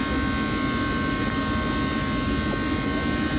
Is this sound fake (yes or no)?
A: no